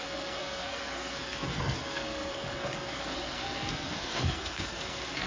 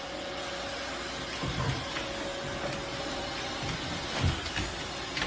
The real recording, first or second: second